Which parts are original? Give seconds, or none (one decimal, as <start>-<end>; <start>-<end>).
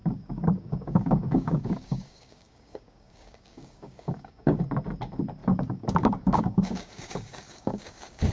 4.6-5.4